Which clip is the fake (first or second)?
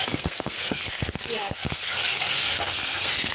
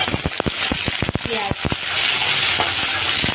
first